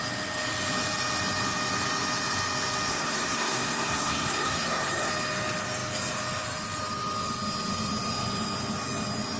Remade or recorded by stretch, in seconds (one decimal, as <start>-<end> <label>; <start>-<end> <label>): 0.0-2.9 recorded; 2.9-5.1 remade; 5.1-9.4 recorded

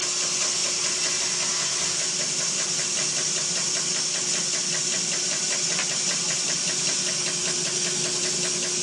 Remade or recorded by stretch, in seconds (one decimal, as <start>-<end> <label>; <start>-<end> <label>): 0.0-8.8 recorded